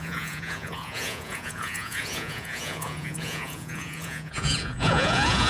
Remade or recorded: remade